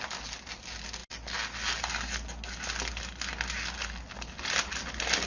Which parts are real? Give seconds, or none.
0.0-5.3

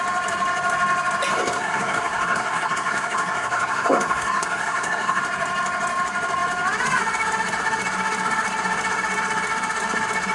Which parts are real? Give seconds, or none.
0.0-1.3; 5.2-10.3